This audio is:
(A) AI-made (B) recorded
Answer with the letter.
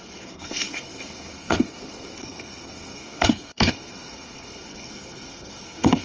A